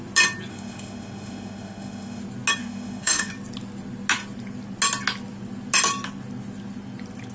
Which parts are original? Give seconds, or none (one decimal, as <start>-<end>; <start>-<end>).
0.0-0.5; 2.2-2.6; 3.3-7.3